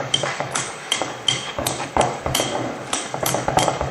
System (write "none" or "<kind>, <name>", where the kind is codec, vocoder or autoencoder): codec, DAC